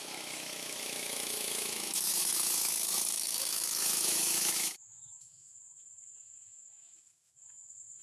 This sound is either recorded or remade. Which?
remade